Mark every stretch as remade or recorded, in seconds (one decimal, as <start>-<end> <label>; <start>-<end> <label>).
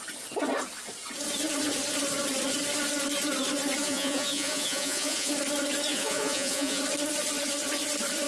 0.0-3.8 recorded; 3.8-5.3 remade; 5.3-5.9 recorded; 5.9-6.8 remade; 6.8-8.3 recorded